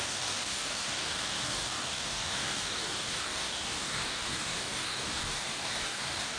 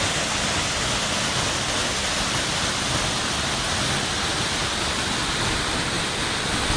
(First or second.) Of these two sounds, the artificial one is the first